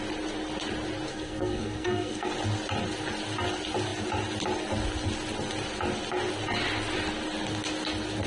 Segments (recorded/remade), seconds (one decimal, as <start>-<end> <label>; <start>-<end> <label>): 0.0-1.1 recorded; 1.1-2.3 remade; 2.3-8.3 recorded